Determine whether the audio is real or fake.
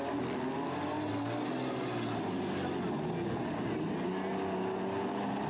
real